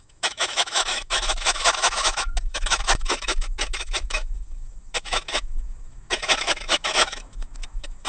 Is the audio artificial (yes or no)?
yes